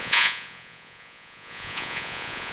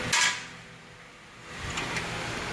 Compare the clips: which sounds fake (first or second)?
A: first